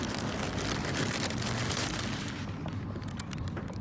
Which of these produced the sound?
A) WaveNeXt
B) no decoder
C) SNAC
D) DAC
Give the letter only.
B